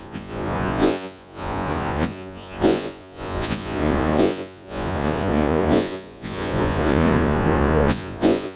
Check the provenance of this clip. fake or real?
fake